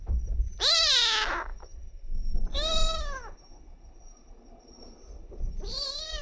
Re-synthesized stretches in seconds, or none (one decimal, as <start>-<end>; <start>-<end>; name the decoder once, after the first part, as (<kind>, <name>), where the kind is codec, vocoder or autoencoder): 0.0-1.5 (vocoder, BigVGAN v2); 4.8-6.2